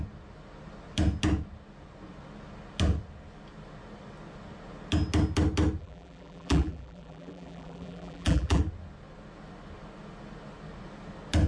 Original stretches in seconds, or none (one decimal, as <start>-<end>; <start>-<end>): 0.0-5.8; 8.6-11.5